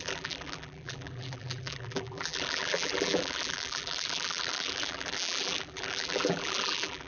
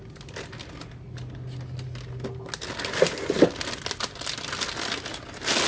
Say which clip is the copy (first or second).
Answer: first